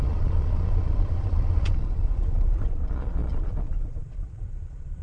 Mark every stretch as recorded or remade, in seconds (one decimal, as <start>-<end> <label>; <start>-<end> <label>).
0.0-5.0 remade